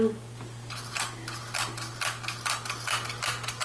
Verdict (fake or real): real